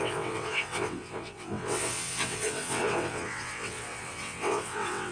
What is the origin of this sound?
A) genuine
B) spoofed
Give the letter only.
B